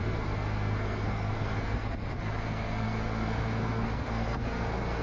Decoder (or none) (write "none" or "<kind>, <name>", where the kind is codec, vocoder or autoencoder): codec, SNAC